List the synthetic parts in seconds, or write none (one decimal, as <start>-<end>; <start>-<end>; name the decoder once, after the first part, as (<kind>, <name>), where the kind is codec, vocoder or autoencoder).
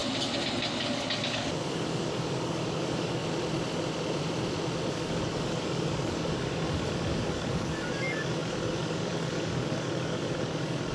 0.8-3.2 (codec, DAC); 4.9-10.9